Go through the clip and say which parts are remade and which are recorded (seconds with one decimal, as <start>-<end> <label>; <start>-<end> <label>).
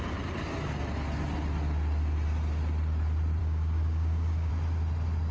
0.0-3.4 recorded; 3.4-4.5 remade; 4.5-5.3 recorded